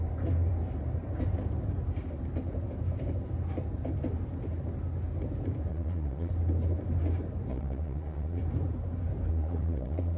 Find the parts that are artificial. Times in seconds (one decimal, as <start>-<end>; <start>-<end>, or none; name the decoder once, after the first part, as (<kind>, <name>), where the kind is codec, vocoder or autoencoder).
5.7-6.3 (vocoder, Vocos); 7.5-8.4; 9.3-10.2